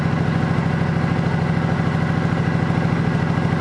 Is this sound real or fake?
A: real